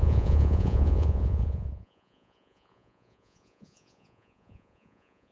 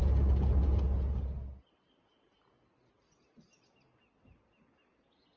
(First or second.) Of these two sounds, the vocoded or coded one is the first